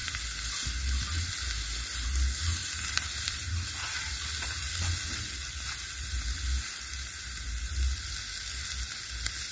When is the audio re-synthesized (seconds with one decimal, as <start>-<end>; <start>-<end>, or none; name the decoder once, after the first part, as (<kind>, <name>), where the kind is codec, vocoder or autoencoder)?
2.6-3.5 (vocoder, BigVGAN v2)